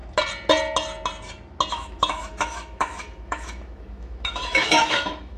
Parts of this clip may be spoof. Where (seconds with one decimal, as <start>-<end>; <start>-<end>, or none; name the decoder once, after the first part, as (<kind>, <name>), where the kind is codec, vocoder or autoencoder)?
1.7-5.4 (autoencoder, DAC-VAE)